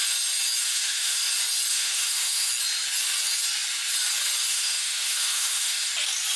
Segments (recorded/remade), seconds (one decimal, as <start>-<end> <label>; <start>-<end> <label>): 0.0-0.6 recorded; 0.6-1.2 remade; 1.2-1.7 recorded; 1.7-2.5 remade; 2.5-4.5 recorded; 4.5-5.9 remade; 5.9-6.4 recorded